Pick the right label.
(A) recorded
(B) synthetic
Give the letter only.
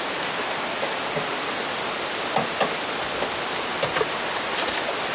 A